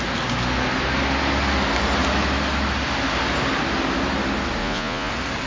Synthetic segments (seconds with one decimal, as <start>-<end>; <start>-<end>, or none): 4.6-5.1